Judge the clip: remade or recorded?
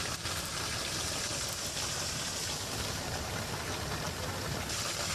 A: recorded